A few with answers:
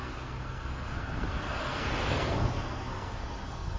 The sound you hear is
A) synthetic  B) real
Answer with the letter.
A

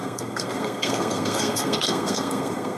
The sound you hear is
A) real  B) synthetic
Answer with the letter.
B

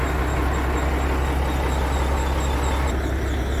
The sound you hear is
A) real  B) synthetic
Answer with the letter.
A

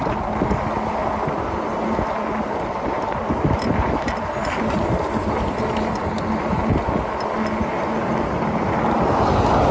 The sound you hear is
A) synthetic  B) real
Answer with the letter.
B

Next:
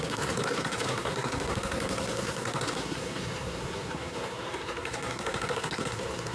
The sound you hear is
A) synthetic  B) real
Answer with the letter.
A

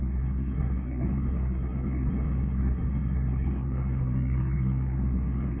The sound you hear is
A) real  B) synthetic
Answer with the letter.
B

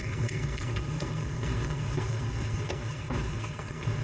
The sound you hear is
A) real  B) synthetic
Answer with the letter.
B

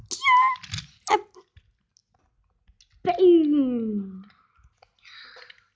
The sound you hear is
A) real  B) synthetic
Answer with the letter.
A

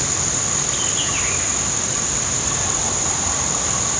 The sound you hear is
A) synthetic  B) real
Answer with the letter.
B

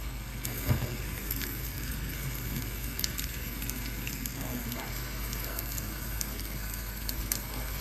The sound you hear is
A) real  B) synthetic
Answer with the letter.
B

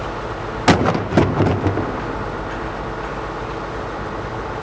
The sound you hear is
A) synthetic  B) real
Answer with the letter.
B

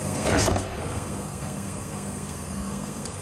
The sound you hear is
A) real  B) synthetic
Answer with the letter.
B